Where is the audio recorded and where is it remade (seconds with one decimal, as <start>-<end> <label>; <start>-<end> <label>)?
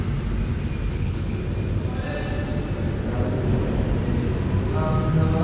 0.0-0.9 recorded; 0.9-1.4 remade; 1.4-5.4 recorded